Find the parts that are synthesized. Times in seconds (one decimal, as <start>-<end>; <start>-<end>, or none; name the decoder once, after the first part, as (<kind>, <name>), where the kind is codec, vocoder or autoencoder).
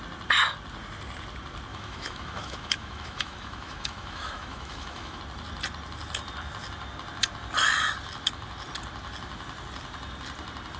1.7-5.2 (autoencoder, DAC-VAE)